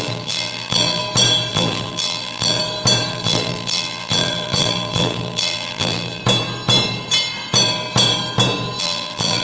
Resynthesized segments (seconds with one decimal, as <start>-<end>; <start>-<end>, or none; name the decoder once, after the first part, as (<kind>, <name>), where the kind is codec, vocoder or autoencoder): 0.0-1.0 (vocoder, BigVGAN v2); 1.5-2.6; 3.1-6.2; 8.8-9.4